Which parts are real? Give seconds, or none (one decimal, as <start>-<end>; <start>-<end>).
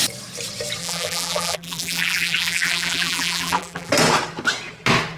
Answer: 0.0-0.8; 3.9-5.2